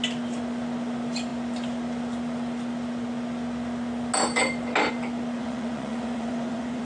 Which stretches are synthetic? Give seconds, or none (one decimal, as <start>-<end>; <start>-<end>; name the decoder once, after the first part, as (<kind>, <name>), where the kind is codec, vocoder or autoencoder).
5.4-6.8 (vocoder, Vocos)